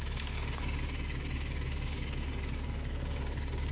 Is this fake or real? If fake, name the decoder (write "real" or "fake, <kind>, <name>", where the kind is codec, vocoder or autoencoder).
fake, codec, DAC